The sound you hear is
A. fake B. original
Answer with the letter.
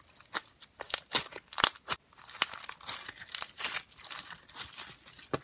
B